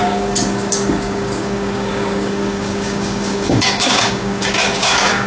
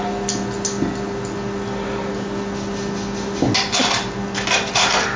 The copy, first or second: first